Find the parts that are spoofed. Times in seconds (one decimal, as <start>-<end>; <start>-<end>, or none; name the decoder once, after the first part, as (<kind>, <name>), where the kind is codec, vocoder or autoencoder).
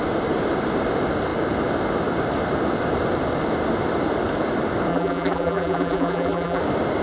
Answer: 4.9-6.6 (vocoder, BigVGAN v2)